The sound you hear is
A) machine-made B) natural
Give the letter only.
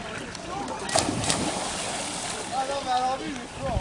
B